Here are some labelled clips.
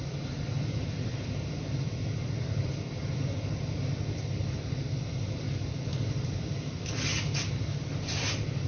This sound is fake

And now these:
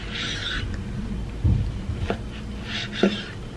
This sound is real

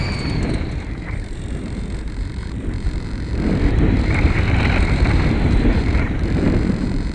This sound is fake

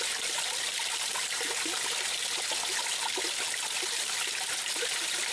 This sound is real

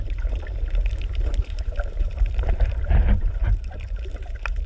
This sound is fake